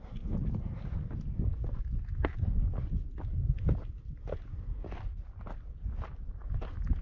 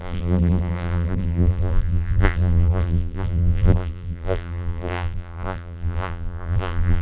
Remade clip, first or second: second